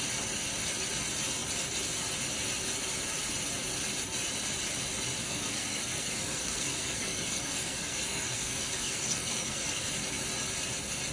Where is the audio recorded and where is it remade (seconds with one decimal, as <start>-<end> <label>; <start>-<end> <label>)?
0.0-5.2 recorded; 5.2-9.9 remade; 9.9-11.1 recorded